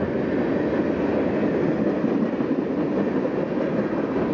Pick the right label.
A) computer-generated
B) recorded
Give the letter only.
B